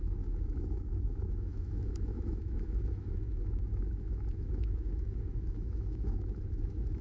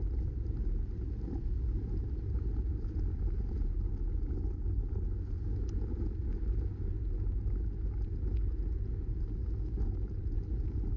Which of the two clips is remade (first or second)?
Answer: first